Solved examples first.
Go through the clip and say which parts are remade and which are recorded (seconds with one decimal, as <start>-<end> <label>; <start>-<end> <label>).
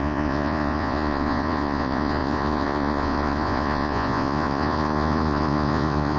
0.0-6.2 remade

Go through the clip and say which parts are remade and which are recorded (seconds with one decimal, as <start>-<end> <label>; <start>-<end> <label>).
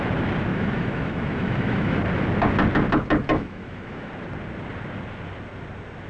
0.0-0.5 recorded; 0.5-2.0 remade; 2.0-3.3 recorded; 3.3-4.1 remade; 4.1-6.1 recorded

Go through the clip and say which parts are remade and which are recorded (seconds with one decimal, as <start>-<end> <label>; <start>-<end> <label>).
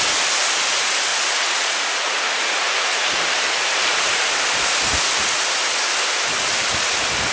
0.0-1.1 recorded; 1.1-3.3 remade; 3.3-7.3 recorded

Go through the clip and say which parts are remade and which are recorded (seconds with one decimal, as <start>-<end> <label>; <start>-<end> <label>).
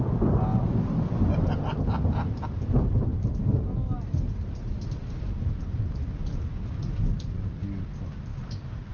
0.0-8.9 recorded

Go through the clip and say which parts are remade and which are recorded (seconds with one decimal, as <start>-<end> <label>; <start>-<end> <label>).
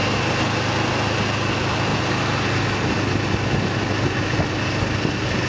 0.0-5.5 recorded